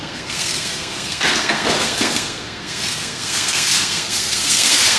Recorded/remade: remade